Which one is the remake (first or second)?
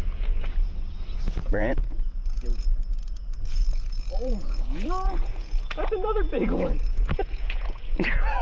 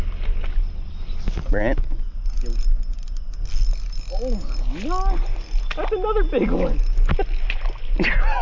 first